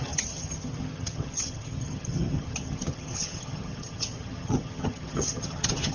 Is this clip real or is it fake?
fake